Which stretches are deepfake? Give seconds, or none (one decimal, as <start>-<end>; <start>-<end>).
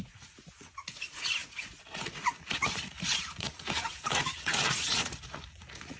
0.0-6.0